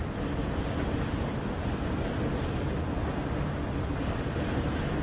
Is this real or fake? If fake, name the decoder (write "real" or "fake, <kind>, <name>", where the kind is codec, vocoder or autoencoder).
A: real